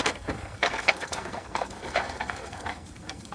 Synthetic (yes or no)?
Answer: yes